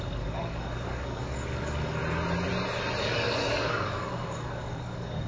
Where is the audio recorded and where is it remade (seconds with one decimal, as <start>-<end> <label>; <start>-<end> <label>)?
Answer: 0.0-2.0 remade; 2.0-3.0 recorded; 3.0-5.3 remade